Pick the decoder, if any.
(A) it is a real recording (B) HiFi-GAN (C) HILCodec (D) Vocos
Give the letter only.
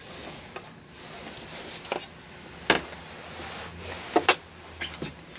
A